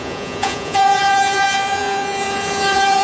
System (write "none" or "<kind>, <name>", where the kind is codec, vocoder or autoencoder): vocoder, Vocos